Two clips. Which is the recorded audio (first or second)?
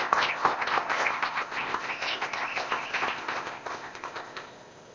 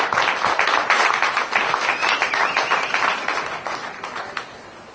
second